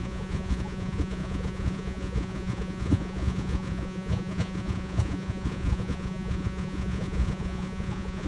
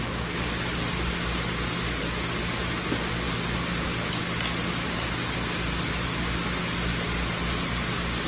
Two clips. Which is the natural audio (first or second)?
second